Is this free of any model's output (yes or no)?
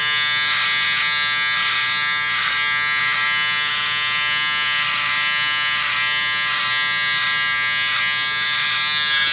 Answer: yes